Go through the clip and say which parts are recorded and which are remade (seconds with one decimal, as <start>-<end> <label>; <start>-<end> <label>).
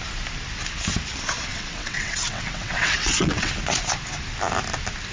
0.0-1.5 recorded; 1.5-3.5 remade; 3.5-5.1 recorded